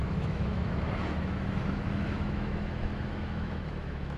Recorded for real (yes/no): no